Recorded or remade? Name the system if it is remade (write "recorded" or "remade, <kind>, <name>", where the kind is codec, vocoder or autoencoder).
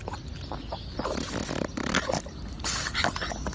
recorded